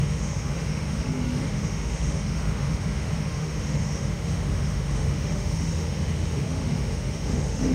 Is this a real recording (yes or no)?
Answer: no